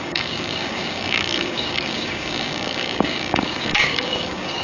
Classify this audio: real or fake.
fake